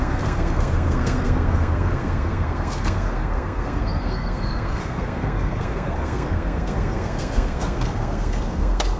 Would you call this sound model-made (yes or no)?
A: yes